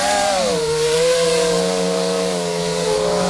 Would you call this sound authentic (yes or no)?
no